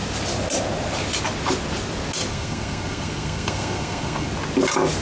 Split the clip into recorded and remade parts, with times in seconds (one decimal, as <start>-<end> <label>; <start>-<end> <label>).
0.0-2.3 recorded; 2.3-4.3 remade; 4.3-5.0 recorded

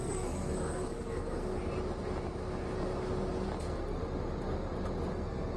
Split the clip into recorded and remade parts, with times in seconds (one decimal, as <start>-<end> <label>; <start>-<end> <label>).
0.0-1.6 remade; 1.6-3.6 recorded; 3.6-4.0 remade; 4.0-5.1 recorded; 5.1-5.6 remade

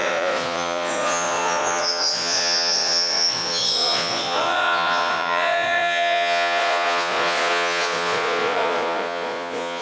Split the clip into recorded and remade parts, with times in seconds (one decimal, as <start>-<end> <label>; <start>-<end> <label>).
0.0-9.8 remade

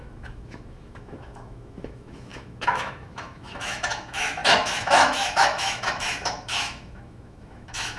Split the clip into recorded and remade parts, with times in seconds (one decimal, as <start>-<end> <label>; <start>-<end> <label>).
0.0-8.0 remade

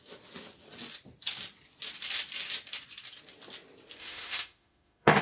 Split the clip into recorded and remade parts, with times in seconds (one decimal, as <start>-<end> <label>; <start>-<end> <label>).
0.0-4.0 recorded; 4.0-5.2 remade

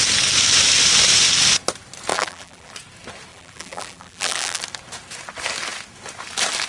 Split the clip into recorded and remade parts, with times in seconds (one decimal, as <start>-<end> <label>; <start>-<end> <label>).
0.0-2.1 recorded; 2.1-2.7 remade; 2.7-3.3 recorded; 3.3-4.6 remade; 4.6-6.7 recorded

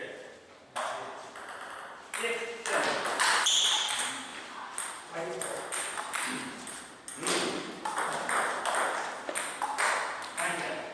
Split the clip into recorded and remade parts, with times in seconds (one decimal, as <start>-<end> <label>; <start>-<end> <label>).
0.0-10.9 recorded

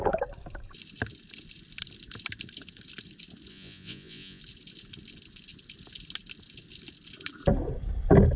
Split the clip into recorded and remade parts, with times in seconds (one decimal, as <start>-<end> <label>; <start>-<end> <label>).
0.0-3.5 recorded; 3.5-4.4 remade; 4.4-8.4 recorded